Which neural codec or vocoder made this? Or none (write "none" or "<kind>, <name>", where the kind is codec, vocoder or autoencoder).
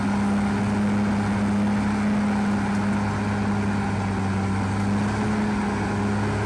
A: none